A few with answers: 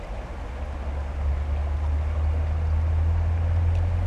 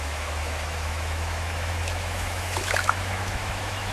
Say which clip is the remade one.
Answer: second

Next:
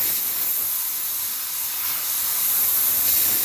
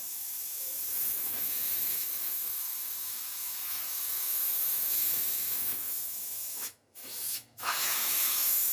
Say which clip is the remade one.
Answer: second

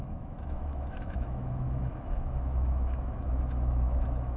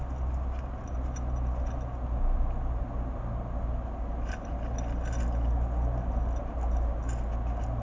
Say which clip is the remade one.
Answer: first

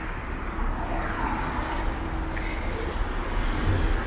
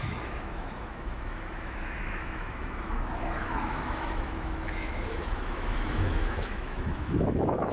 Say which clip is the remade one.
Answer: second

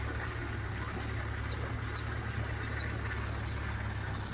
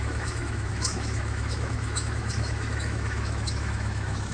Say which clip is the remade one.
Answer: second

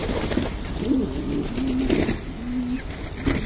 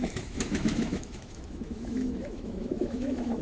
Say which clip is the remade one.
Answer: second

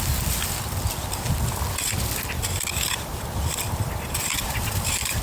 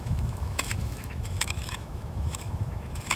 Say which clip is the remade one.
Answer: second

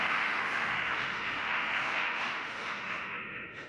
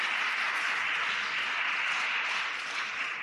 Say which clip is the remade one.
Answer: first